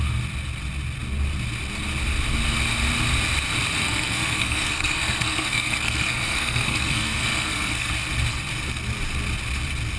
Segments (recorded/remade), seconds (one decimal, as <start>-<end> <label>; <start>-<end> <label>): 0.0-3.8 recorded; 3.8-7.9 remade; 7.9-10.0 recorded

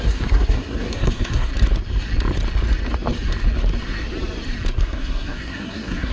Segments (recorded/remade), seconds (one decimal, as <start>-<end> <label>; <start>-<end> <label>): 0.0-1.5 remade; 1.5-4.7 recorded; 4.7-6.1 remade

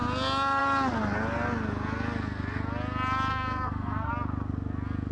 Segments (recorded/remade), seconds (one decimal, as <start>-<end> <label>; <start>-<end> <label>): 0.0-3.3 recorded; 3.3-4.1 remade; 4.1-5.1 recorded

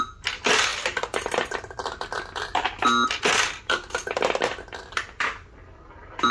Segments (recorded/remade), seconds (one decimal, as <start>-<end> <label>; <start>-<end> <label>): 0.0-6.3 recorded

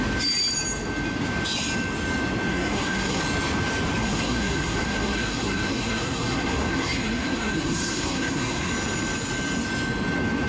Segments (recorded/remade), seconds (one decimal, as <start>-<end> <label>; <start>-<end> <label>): 0.0-2.5 recorded; 2.5-3.2 remade; 3.2-4.0 recorded; 4.0-8.7 remade; 8.7-10.5 recorded